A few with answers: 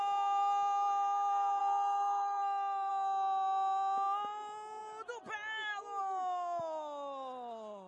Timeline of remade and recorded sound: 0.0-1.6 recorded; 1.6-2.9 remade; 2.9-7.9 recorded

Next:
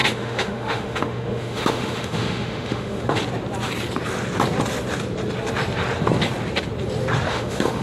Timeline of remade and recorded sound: 0.0-3.2 remade; 3.2-7.3 recorded; 7.3-7.8 remade

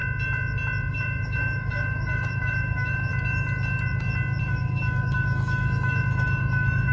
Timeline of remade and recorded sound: 0.0-0.9 recorded; 0.9-3.1 remade; 3.1-4.4 recorded; 4.4-6.9 remade

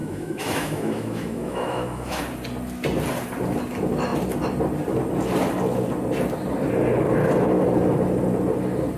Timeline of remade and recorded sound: 0.0-2.2 remade; 2.2-9.0 recorded

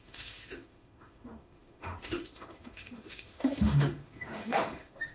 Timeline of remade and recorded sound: 0.0-5.1 remade

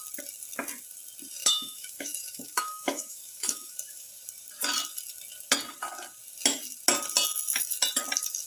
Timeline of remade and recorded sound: 0.0-1.4 recorded; 1.4-4.1 remade; 4.1-8.5 recorded